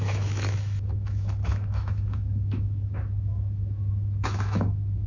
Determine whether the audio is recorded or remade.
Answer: remade